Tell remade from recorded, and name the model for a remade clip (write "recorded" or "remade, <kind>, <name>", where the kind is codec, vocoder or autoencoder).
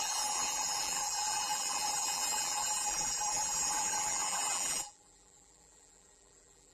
remade, vocoder, BigVGAN v2